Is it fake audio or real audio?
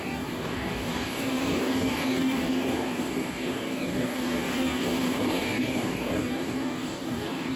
fake